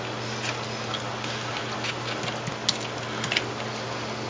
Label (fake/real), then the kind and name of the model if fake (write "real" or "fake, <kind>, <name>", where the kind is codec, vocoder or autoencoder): real